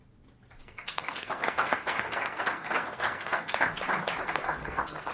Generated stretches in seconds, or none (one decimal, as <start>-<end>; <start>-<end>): 0.6-3.7; 4.2-5.1